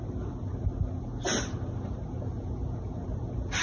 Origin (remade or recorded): recorded